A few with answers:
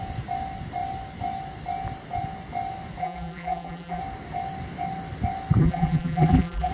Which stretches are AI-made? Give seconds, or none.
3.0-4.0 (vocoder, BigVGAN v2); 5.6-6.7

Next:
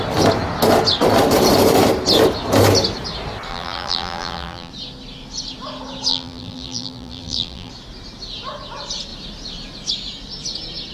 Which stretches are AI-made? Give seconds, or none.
3.5-4.7 (vocoder, BigVGAN v2); 6.1-7.7

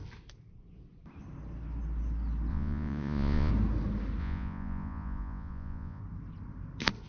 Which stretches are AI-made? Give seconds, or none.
2.5-3.5 (vocoder, Vocos); 4.2-6.0